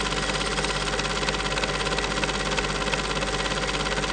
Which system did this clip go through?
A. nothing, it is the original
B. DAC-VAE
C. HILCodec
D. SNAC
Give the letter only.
A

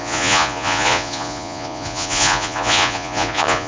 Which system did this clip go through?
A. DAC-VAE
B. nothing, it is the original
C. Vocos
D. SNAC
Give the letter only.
C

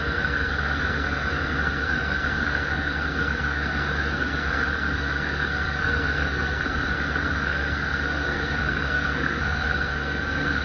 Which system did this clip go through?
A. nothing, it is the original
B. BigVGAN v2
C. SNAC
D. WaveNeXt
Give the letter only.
C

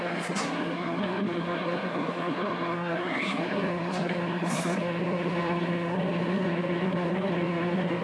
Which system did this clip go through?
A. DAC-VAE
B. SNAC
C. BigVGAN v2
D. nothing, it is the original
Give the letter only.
B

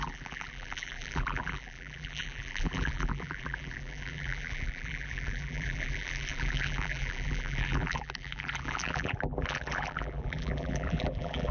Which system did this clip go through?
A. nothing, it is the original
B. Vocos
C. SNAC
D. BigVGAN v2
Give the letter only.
D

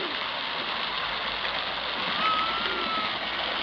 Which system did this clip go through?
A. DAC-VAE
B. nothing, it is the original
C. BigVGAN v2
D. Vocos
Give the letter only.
B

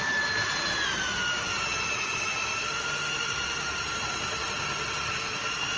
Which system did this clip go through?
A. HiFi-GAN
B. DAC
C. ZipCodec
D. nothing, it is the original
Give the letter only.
D